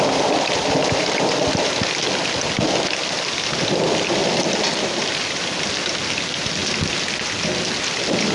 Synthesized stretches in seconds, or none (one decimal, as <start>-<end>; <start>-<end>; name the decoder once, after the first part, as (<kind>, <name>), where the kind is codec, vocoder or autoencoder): none